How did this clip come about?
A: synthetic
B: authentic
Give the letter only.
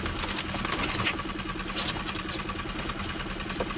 B